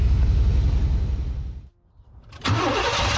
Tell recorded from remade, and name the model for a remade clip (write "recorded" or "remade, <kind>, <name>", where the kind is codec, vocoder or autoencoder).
recorded